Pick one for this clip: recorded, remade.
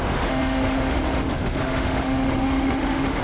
remade